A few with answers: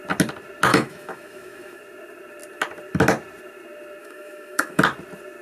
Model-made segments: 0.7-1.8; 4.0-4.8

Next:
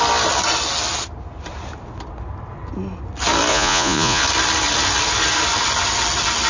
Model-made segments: 3.5-4.2

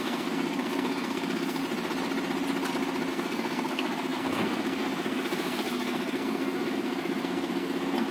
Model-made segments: 0.0-1.6; 3.1-8.1

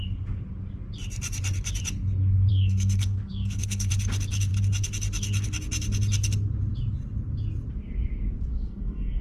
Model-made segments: 2.5-3.9; 8.5-9.2